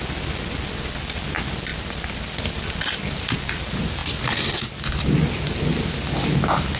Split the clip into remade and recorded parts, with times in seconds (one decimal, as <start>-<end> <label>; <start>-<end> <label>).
0.0-6.8 recorded